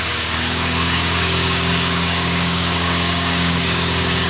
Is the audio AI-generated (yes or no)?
yes